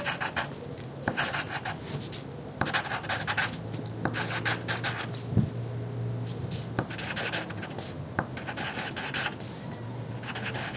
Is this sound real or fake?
real